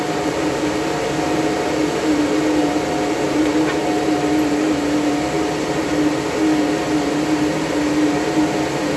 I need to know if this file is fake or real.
real